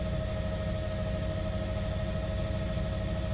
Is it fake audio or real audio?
real